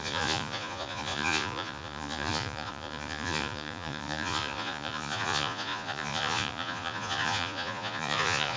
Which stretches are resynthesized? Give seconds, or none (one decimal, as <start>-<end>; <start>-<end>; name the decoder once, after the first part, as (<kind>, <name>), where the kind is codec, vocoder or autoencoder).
0.0-8.6 (vocoder, Vocos)